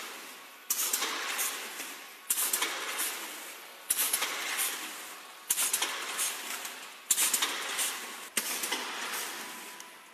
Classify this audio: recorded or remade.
recorded